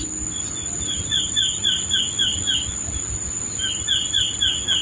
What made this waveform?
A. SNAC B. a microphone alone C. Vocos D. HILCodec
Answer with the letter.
B